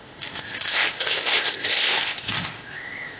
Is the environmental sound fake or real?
fake